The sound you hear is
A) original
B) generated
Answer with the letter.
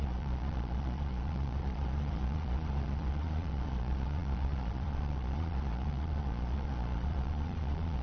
B